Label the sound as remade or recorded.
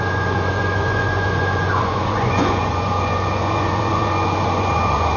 remade